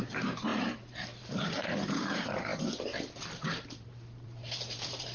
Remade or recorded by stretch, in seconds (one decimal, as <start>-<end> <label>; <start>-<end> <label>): 0.0-2.5 remade; 2.5-3.5 recorded; 3.5-5.1 remade